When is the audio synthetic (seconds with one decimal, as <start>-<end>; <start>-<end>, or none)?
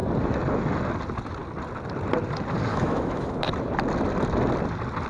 2.7-3.4